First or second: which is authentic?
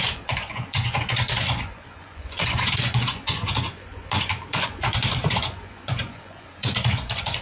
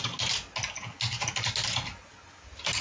second